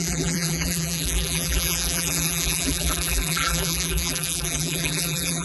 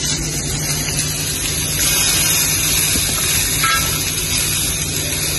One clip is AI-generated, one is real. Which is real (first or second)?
second